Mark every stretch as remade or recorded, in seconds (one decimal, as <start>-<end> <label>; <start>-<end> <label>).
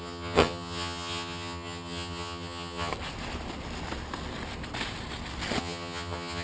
0.0-2.9 remade; 2.9-5.6 recorded; 5.6-6.4 remade